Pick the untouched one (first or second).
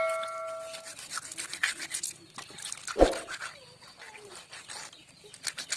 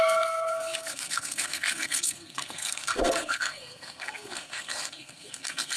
first